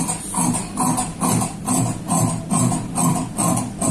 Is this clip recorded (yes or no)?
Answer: yes